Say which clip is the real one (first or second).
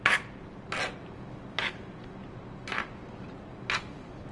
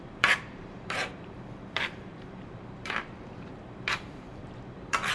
first